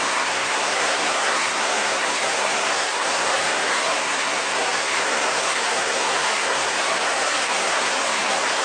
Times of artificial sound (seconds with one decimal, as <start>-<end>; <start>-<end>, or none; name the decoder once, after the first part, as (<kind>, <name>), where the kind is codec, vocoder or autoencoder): 0.0-8.6 (codec, SNAC)